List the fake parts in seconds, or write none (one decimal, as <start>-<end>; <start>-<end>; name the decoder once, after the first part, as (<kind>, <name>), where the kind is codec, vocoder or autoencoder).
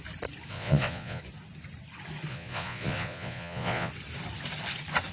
0.5-1.2 (vocoder, Vocos); 2.3-3.9